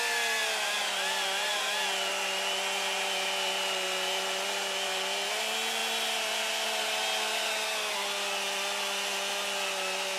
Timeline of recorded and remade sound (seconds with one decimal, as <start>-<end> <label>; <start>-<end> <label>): 0.0-10.2 recorded